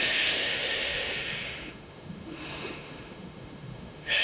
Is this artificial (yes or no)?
yes